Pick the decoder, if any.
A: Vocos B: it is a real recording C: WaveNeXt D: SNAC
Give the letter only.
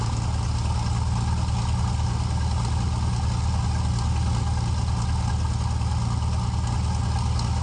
B